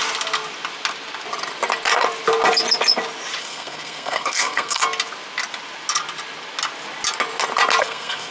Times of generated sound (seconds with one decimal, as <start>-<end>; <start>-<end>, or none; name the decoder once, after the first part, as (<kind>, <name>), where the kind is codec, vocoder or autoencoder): 3.4-4.8 (codec, SNAC); 7.8-8.3